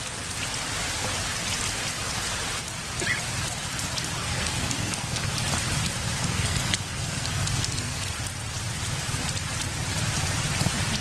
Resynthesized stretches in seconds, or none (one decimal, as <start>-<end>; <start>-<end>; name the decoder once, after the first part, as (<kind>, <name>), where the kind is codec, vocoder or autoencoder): 4.2-5.3 (codec, SNAC); 6.2-8.1